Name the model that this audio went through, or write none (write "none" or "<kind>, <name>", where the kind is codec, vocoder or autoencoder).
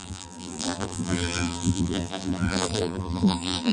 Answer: vocoder, BigVGAN v2